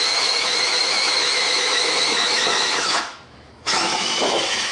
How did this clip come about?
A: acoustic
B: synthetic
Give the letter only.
B